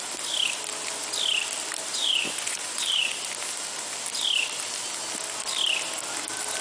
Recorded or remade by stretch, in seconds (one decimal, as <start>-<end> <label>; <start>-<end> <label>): 0.0-1.9 recorded; 1.9-3.2 remade; 3.2-6.6 recorded